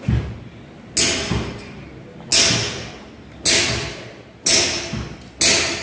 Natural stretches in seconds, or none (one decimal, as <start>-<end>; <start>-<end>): 0.0-5.8